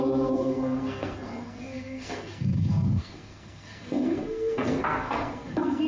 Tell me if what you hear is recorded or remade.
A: remade